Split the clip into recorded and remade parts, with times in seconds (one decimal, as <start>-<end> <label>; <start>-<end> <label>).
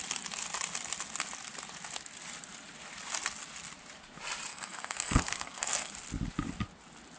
0.0-4.5 recorded; 4.5-5.9 remade; 5.9-7.2 recorded